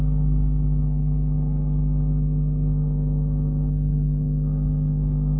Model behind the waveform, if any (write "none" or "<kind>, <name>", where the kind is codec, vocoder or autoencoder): codec, HILCodec